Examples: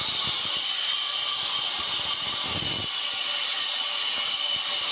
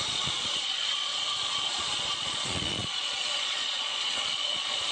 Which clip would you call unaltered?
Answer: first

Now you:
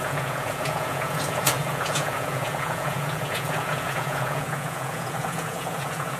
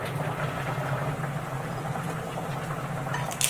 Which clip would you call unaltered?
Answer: second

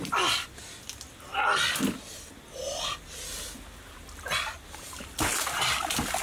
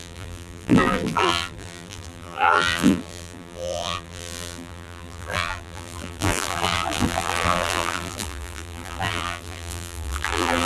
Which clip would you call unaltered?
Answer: first